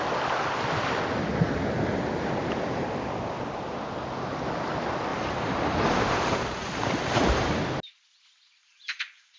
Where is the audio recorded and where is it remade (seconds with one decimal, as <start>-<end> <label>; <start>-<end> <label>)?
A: 0.0-5.1 recorded; 5.1-7.6 remade; 7.6-8.6 recorded; 8.6-9.4 remade